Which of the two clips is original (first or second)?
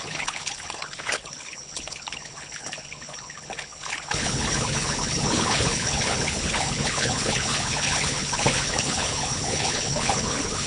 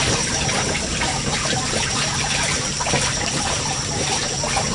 second